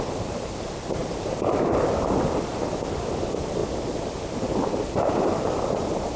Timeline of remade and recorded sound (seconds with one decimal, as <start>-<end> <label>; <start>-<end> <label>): 0.0-2.5 remade; 2.5-3.2 recorded; 3.2-3.6 remade; 3.6-4.3 recorded; 4.3-6.2 remade